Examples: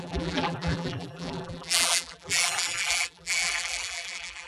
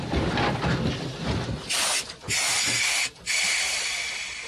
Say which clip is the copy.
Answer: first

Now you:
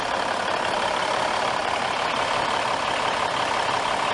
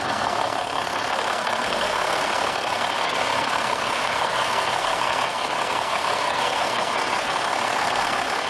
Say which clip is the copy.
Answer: second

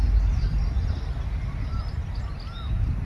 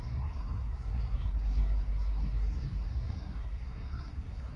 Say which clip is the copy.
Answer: second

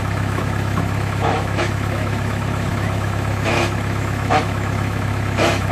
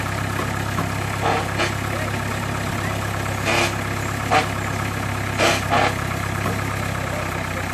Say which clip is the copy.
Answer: first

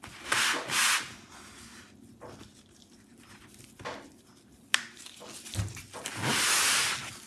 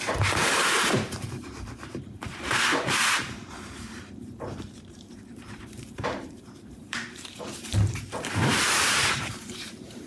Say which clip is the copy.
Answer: second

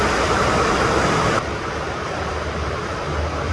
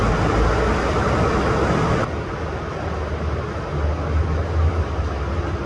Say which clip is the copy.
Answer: first